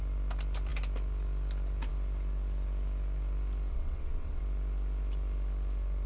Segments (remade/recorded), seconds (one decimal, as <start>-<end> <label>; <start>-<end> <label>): 0.0-3.7 recorded; 3.7-4.4 remade; 4.4-6.1 recorded

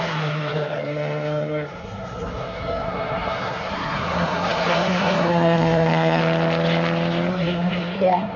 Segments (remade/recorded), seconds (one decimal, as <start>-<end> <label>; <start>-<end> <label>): 0.0-6.2 remade; 6.2-7.3 recorded; 7.3-8.4 remade

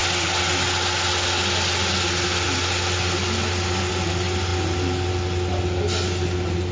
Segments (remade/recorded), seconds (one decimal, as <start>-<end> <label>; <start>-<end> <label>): 0.0-6.7 recorded

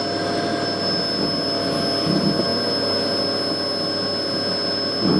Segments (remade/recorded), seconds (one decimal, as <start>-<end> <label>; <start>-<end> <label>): 0.0-5.2 recorded

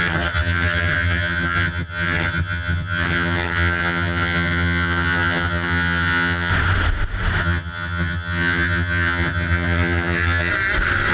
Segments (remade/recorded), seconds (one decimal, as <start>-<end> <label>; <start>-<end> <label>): 0.0-6.5 remade; 6.5-7.4 recorded; 7.4-10.5 remade; 10.5-11.1 recorded

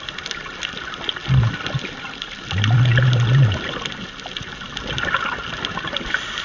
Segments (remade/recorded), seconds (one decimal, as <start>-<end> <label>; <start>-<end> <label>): 0.0-6.4 recorded

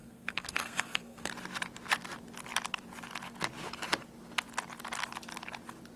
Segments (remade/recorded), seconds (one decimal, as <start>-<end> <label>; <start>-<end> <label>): 0.0-1.3 remade; 1.3-6.0 recorded